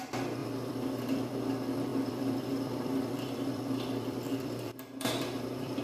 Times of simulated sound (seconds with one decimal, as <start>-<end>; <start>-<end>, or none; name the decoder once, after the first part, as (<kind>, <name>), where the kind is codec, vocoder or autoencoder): 0.4-1.3 (vocoder, BigVGAN v2); 1.9-5.8